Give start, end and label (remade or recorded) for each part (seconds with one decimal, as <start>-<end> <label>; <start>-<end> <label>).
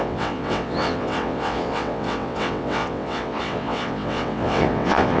0.0-5.2 remade